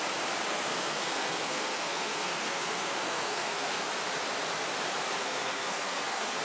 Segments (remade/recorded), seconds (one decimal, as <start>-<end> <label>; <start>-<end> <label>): 0.0-0.5 recorded; 0.5-3.8 remade; 3.8-5.2 recorded; 5.2-6.4 remade